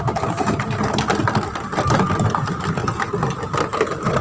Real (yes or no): yes